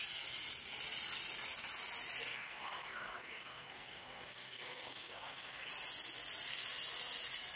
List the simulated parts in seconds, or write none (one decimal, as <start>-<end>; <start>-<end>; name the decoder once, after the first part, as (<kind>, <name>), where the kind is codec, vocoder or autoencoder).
2.3-5.7 (codec, SNAC)